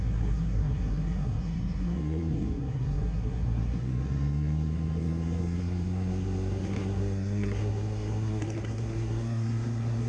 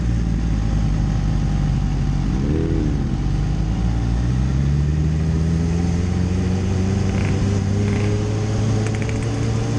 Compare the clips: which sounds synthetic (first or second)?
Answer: first